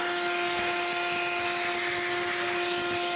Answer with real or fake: real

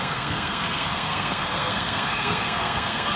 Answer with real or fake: fake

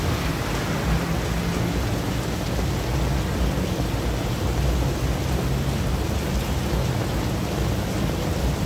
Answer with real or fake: real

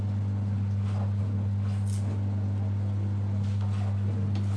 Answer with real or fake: real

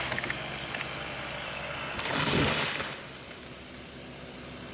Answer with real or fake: real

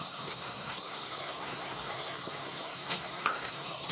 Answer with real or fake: fake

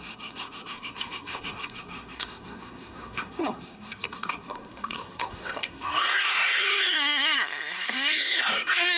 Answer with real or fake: fake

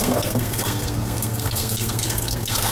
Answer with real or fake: fake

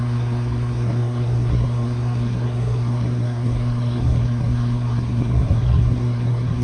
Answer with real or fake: fake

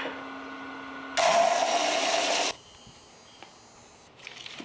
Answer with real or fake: real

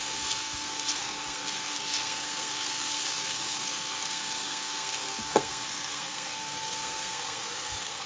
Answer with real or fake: fake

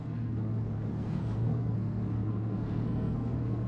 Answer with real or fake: fake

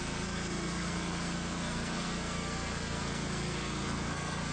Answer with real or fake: fake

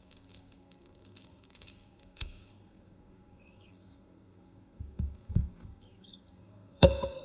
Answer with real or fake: fake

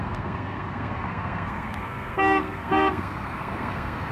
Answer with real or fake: fake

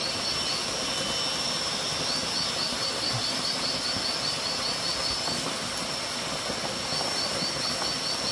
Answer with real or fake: real